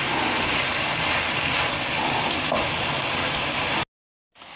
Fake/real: real